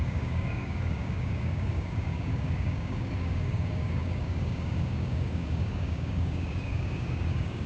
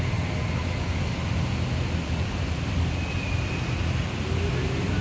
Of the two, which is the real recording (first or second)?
second